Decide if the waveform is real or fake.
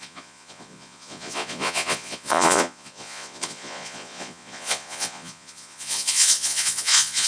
fake